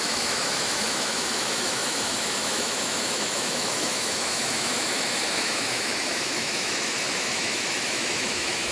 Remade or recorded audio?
remade